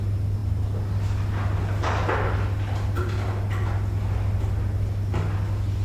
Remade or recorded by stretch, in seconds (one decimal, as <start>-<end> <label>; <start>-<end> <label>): 0.0-5.8 recorded